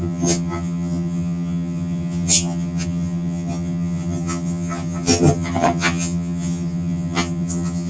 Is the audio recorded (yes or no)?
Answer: no